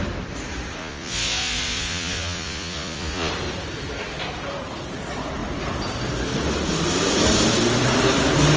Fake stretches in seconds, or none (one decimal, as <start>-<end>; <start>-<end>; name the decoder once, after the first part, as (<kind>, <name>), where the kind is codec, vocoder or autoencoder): 0.8-3.3 (vocoder, Vocos)